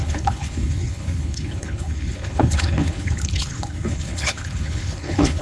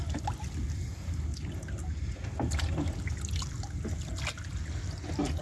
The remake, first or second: first